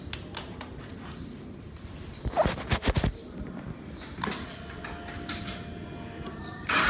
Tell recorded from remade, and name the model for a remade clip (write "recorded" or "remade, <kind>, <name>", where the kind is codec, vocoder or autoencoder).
recorded